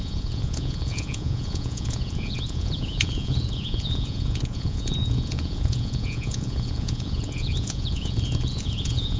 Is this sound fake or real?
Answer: fake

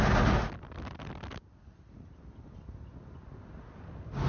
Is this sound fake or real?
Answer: real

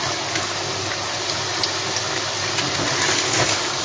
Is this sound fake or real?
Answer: real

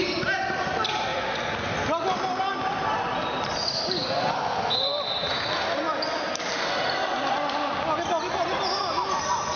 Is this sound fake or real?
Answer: real